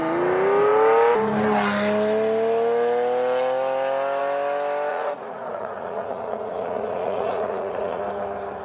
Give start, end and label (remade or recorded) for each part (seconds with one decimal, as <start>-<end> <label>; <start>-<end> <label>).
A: 0.0-4.9 recorded; 4.9-8.0 remade; 8.0-8.6 recorded